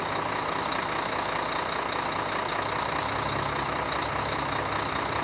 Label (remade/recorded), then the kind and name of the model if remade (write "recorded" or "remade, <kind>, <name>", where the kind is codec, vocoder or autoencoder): recorded